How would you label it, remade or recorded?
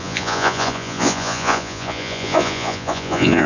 remade